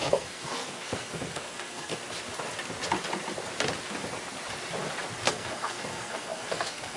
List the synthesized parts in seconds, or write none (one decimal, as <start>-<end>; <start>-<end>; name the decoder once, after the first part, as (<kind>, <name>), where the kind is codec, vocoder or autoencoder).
0.0-1.9 (codec, SNAC); 5.3-7.0